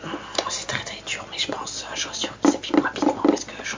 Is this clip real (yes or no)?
yes